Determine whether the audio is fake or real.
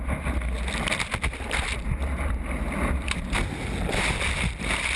real